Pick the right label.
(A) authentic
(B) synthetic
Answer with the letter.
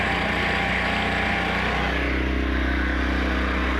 A